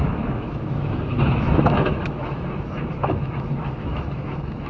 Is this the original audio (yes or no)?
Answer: no